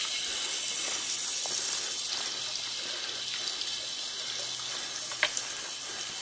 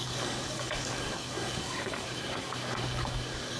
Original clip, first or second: first